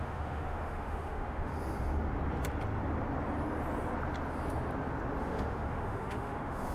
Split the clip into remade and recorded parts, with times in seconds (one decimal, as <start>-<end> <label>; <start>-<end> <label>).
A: 0.0-1.5 remade; 1.5-5.2 recorded; 5.2-6.7 remade

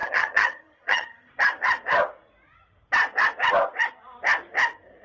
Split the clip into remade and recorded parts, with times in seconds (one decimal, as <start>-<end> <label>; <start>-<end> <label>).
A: 0.0-1.3 remade; 1.3-5.0 recorded

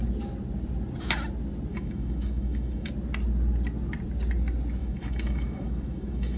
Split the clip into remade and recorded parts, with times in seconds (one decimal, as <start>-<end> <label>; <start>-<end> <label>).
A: 0.0-1.7 recorded; 1.7-2.9 remade; 2.9-4.8 recorded; 4.8-6.4 remade

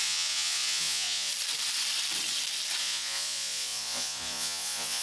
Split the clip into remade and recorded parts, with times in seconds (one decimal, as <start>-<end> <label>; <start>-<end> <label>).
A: 0.0-1.3 remade; 1.3-2.8 recorded; 2.8-5.0 remade

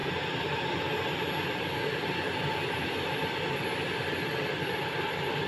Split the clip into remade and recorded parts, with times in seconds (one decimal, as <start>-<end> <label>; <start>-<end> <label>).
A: 0.0-0.8 remade; 0.8-5.5 recorded